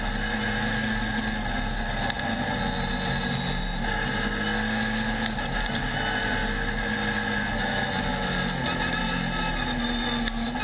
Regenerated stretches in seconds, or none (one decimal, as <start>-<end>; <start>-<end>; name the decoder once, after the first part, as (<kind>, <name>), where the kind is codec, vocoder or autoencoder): none

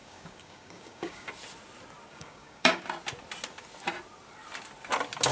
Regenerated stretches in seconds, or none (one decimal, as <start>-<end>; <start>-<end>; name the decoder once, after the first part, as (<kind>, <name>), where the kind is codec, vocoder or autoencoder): 0.0-1.3 (codec, DAC); 2.1-2.8

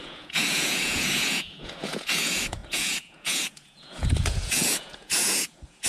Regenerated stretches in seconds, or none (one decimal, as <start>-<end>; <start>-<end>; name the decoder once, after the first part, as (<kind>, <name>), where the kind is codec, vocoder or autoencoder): 0.0-5.9 (vocoder, Vocos)

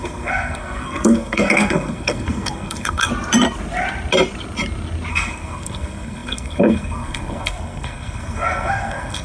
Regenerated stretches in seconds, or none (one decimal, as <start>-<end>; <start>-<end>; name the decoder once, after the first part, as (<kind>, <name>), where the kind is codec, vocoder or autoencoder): 0.0-3.1 (codec, SNAC); 5.1-9.2

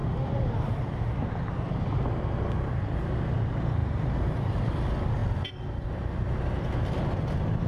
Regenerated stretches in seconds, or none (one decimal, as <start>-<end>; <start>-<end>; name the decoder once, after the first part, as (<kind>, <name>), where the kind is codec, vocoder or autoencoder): 3.8-4.6 (vocoder, BigVGAN v2)

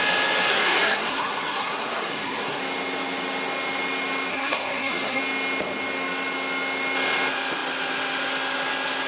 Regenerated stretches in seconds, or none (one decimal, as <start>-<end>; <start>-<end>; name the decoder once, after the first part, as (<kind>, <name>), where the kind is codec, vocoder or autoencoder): 0.5-2.6 (codec, SNAC); 4.3-5.2

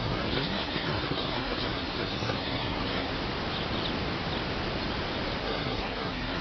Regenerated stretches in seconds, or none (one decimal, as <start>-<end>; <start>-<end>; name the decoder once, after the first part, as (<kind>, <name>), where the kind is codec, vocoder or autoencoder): 0.0-3.1 (codec, SNAC); 5.4-6.4

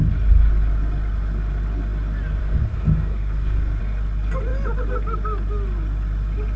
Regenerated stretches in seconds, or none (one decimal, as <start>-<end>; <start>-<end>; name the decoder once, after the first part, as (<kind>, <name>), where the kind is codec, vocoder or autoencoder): 2.4-3.8 (codec, SNAC)